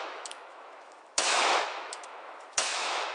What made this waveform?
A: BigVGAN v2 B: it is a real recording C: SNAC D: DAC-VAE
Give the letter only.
D